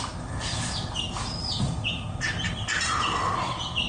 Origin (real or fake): real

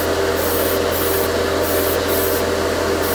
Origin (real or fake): real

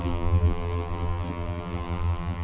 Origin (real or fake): fake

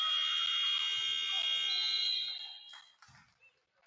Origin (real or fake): real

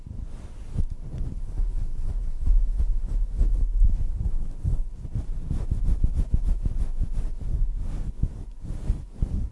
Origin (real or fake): real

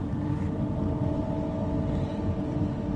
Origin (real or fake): real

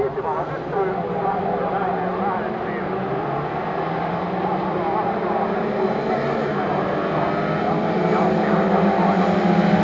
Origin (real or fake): real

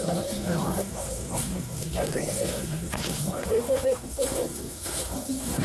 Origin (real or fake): fake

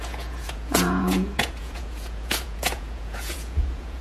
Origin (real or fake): fake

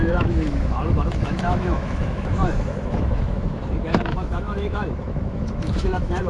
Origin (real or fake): fake